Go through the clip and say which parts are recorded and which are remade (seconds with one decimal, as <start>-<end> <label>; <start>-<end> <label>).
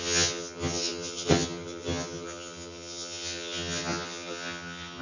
0.0-5.0 remade